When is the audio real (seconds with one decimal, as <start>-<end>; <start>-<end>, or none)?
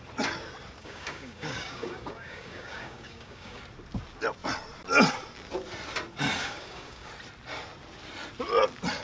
0.0-0.8; 3.6-6.4; 7.1-9.0